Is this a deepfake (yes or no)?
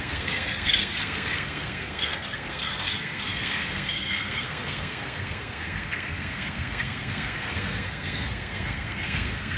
yes